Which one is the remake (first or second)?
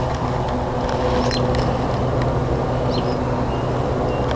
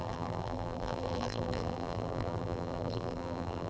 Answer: second